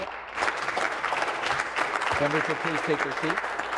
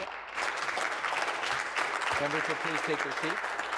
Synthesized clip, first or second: first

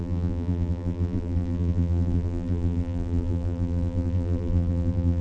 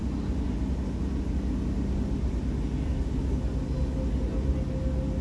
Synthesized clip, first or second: first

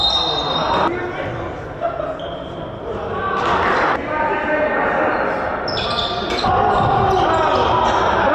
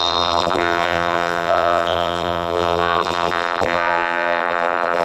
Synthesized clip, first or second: second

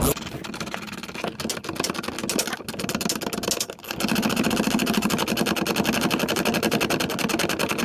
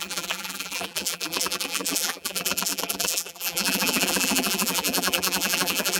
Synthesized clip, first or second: second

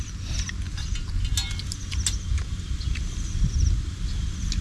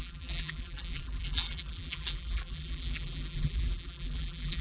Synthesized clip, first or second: second